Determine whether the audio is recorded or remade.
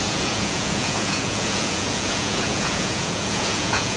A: remade